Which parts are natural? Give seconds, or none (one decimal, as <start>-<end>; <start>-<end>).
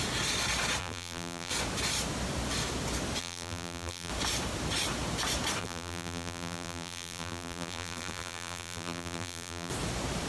0.0-0.8; 1.5-3.2; 4.1-5.6; 9.7-10.3